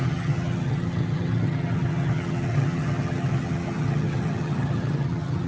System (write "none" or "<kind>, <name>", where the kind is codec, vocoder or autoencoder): vocoder, HiFi-GAN